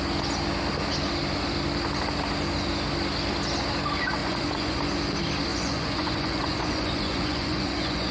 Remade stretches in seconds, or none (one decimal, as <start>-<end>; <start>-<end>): 4.2-4.8; 5.5-8.1